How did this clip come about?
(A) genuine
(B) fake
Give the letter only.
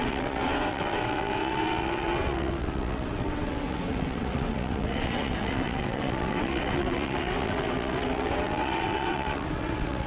B